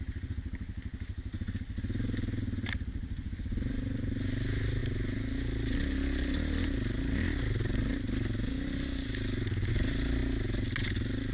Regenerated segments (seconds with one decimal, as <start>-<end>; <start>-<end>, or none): none